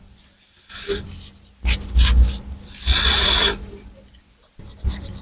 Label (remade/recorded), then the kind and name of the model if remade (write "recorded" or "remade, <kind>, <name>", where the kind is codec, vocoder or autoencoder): recorded